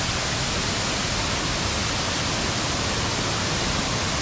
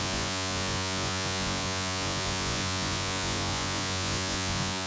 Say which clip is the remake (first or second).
second